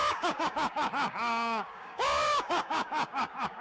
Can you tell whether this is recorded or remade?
remade